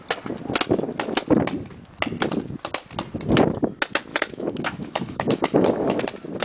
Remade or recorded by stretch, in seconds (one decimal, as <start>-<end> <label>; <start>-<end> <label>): 0.0-4.1 recorded; 4.1-6.0 remade; 6.0-6.4 recorded